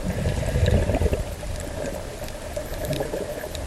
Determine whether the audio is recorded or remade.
remade